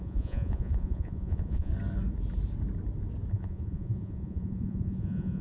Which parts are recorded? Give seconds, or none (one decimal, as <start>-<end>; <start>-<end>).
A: 1.7-3.3